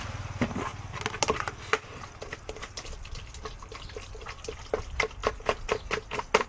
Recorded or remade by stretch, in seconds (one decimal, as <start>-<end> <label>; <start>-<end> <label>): 0.0-6.5 recorded